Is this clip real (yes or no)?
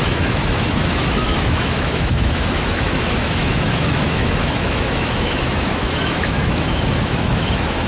no